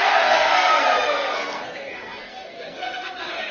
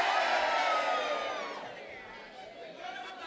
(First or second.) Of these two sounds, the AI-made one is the first